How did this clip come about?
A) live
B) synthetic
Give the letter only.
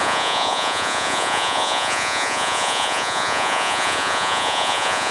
B